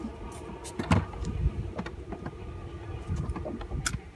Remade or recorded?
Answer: recorded